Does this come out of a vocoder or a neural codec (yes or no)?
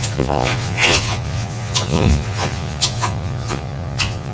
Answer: yes